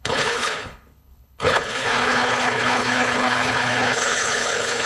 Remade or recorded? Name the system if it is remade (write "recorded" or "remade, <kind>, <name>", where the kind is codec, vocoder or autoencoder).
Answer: remade, codec, HILCodec